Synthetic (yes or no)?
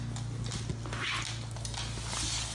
no